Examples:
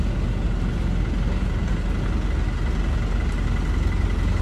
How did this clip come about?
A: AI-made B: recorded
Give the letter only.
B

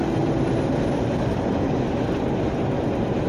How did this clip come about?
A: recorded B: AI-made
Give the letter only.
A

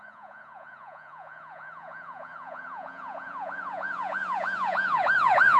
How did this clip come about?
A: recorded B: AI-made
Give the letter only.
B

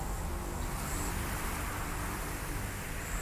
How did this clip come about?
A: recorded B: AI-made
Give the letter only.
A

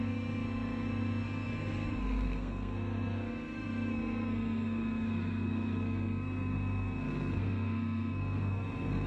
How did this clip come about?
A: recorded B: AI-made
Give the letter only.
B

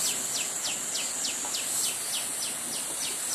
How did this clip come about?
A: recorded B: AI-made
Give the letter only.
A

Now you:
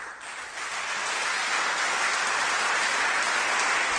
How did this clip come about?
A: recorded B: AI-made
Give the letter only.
A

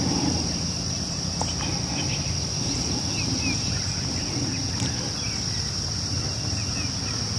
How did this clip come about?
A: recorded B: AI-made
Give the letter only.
A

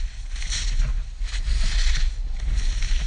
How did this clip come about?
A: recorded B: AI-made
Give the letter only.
A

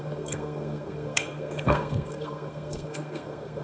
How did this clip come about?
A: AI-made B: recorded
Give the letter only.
A